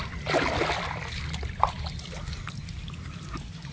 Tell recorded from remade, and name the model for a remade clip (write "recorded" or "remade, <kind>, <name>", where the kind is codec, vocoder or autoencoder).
recorded